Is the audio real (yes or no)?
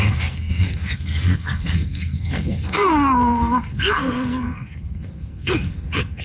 no